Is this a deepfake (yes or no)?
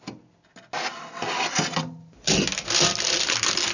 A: no